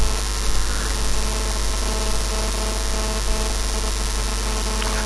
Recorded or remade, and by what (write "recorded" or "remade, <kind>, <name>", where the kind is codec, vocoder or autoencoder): recorded